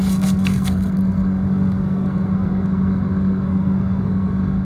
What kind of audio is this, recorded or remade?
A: remade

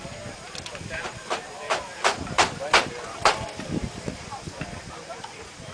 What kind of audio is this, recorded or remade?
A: remade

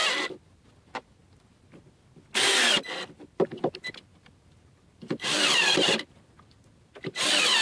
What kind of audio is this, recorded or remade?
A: recorded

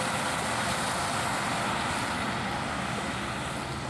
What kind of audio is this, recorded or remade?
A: recorded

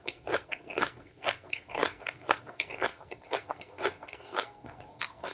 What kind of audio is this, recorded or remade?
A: remade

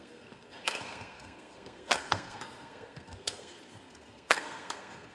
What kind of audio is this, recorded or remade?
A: remade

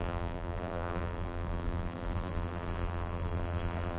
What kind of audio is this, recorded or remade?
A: remade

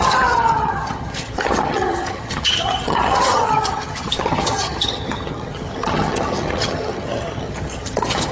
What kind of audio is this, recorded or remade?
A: remade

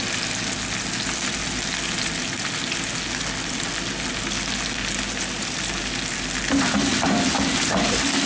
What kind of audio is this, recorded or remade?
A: recorded